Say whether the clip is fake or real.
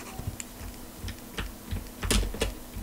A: real